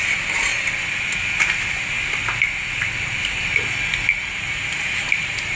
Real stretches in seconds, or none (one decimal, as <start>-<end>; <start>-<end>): 0.5-2.7; 3.4-4.3